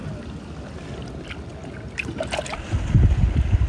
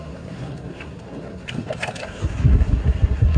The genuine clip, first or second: first